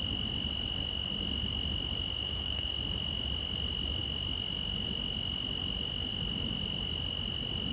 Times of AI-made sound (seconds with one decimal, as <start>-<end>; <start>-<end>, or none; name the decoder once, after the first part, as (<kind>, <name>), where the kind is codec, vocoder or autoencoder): 2.2-2.7 (autoencoder, DAC-VAE)